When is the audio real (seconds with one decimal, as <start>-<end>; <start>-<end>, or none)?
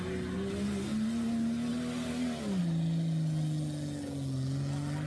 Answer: 0.0-5.1